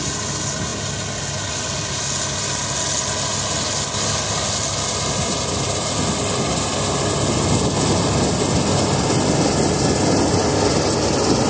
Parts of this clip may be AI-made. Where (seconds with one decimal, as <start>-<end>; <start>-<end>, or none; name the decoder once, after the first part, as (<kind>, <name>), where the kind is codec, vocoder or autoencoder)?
none